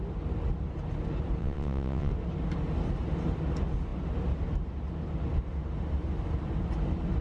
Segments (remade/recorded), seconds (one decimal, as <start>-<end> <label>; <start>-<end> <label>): 0.0-1.4 recorded; 1.4-2.1 remade; 2.1-7.2 recorded